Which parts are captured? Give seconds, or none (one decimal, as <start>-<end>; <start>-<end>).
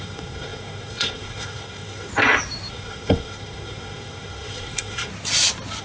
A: 2.1-2.7; 5.1-5.8